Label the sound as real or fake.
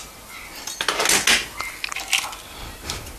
real